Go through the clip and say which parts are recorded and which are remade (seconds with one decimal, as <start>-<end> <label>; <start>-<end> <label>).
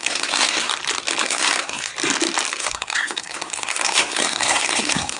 0.0-0.7 remade; 0.7-1.2 recorded; 1.2-1.9 remade; 1.9-2.5 recorded; 2.5-5.2 remade